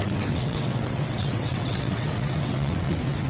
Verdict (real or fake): fake